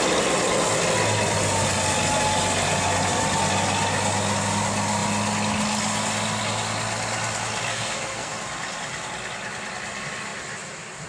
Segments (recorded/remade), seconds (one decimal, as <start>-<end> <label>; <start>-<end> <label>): 0.0-7.7 recorded; 7.7-8.3 remade; 8.3-11.1 recorded